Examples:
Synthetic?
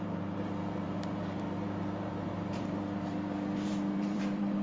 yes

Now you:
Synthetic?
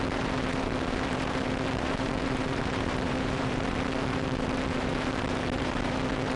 yes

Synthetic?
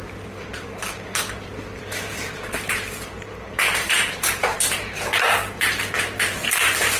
yes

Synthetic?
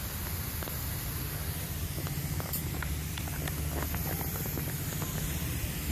yes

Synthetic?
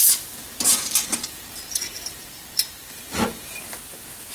yes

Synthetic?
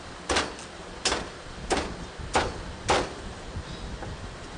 no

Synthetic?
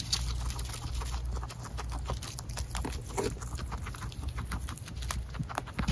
no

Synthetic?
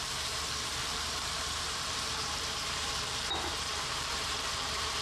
yes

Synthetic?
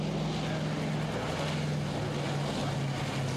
no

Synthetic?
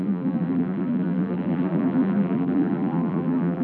yes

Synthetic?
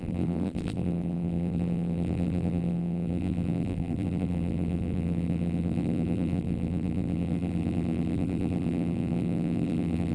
yes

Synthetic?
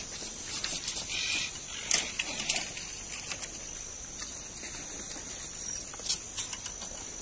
no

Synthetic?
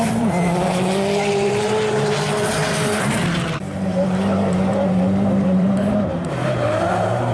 yes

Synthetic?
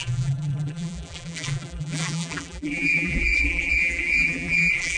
yes